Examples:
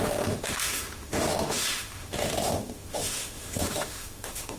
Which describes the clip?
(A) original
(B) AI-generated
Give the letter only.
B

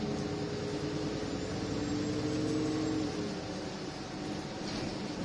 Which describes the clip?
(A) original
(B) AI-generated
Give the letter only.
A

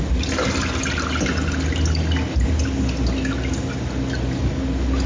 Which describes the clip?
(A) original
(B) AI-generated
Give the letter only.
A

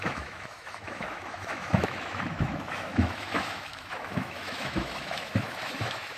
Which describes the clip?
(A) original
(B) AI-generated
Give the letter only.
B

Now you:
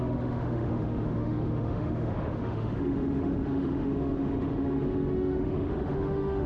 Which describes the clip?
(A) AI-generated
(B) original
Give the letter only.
A